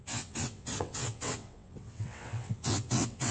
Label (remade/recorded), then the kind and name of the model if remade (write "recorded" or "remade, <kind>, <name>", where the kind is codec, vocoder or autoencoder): remade, vocoder, WaveNeXt